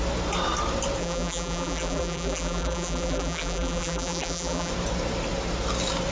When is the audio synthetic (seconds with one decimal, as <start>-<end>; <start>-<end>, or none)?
1.0-4.7